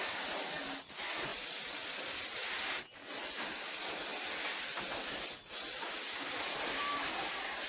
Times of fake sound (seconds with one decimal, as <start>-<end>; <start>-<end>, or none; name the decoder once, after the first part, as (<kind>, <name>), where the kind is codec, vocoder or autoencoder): none